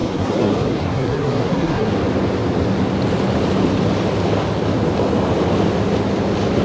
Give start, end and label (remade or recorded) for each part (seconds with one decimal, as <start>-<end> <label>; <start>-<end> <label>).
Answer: 0.0-1.9 remade; 1.9-6.6 recorded